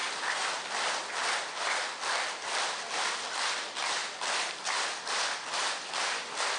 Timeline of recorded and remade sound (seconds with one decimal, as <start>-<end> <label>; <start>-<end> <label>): 0.0-6.6 recorded